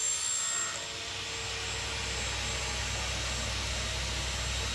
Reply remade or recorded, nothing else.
recorded